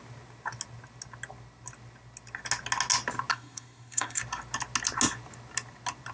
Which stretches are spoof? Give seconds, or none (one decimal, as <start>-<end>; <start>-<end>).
3.3-4.2

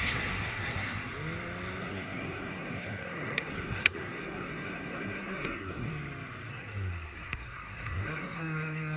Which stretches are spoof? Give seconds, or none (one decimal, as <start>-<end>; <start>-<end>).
0.0-1.1; 1.8-5.9; 6.5-9.0

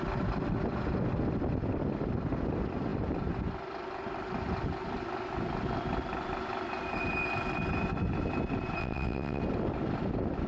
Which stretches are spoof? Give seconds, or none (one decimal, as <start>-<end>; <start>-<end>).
8.8-9.4

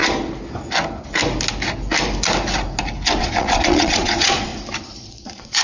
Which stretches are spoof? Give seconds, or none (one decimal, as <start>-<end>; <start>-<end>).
3.2-4.5; 5.0-5.6